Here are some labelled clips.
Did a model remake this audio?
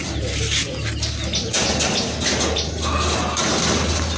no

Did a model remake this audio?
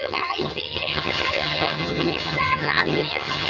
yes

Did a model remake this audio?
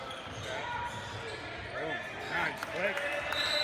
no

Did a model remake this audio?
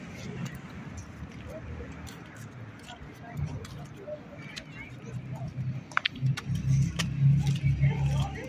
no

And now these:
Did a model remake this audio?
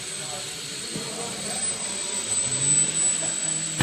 no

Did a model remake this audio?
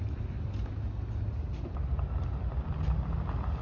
no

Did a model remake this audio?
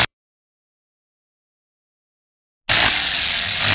no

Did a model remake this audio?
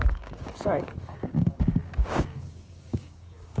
yes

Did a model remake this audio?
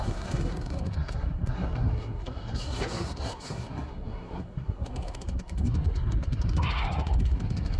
yes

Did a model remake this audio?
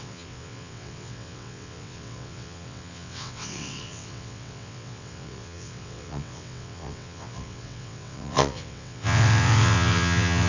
yes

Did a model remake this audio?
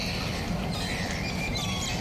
yes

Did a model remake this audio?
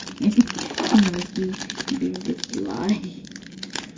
no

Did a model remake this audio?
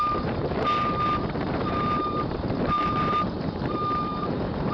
yes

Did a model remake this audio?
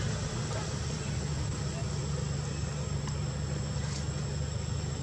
no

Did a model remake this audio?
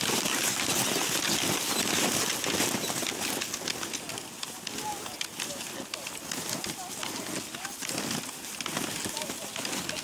no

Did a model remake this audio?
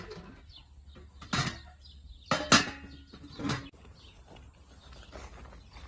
no